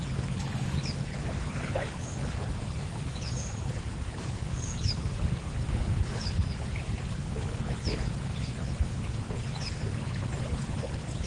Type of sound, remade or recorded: remade